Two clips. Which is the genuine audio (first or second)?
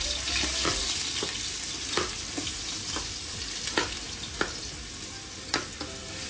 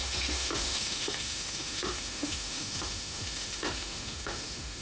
first